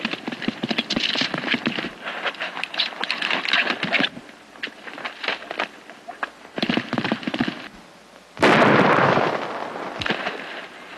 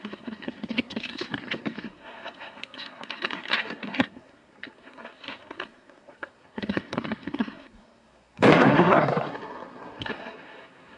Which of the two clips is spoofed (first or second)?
second